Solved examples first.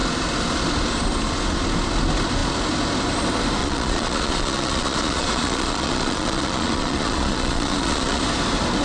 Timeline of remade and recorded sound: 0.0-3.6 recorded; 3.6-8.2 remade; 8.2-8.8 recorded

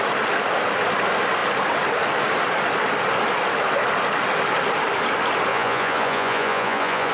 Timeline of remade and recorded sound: 0.0-5.5 recorded; 5.5-7.1 remade

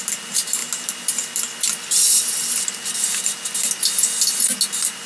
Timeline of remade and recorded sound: 0.0-5.1 recorded

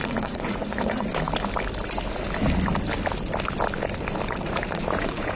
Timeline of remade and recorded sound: 0.0-1.1 remade; 1.1-4.3 recorded; 4.3-5.4 remade

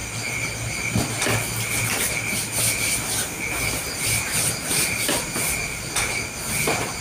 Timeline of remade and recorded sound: 0.0-7.0 recorded

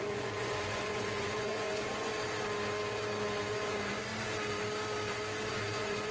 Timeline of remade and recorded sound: 0.0-2.1 remade; 2.1-3.5 recorded; 3.5-4.1 remade; 4.1-5.5 recorded; 5.5-6.1 remade

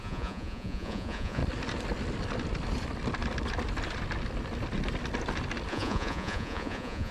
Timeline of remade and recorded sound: 0.0-1.4 remade; 1.4-5.7 recorded; 5.7-7.1 remade